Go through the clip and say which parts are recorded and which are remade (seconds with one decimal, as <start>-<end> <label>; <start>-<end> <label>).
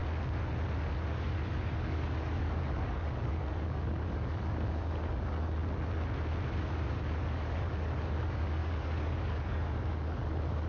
0.0-1.1 recorded; 1.1-5.6 remade; 5.6-6.6 recorded; 6.6-10.7 remade